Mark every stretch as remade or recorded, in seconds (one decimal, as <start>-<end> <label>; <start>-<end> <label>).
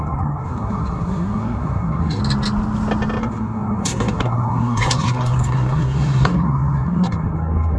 0.0-2.2 remade; 2.2-3.2 recorded; 3.2-7.8 remade